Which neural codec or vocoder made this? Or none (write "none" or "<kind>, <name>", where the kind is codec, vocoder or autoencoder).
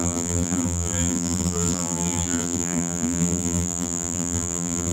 vocoder, BigVGAN v2